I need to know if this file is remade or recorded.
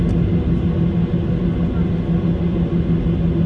recorded